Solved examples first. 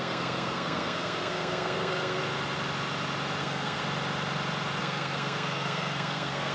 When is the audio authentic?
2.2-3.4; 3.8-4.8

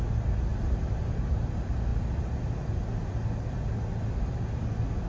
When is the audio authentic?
0.0-5.1

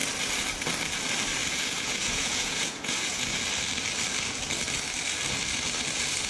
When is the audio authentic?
0.0-1.4; 3.4-6.3

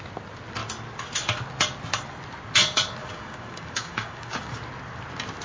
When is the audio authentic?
0.0-3.0; 4.6-5.4

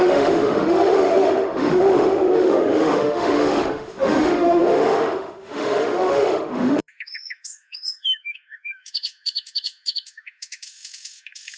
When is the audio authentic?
none

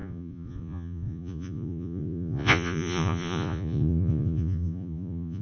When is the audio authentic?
none

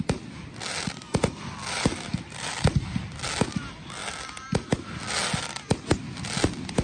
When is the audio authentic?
0.0-6.8